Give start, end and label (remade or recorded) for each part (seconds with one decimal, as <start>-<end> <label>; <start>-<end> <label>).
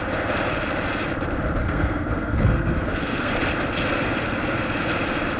0.0-1.6 recorded; 1.6-3.3 remade; 3.3-5.4 recorded